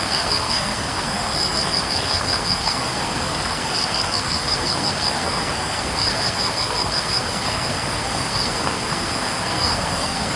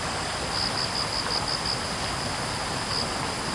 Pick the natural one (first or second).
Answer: second